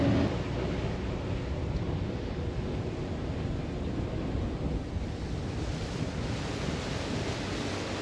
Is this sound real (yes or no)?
yes